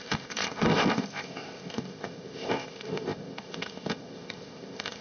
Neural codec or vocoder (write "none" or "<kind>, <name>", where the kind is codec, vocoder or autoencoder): codec, ZipCodec